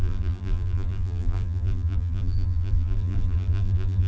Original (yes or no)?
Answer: no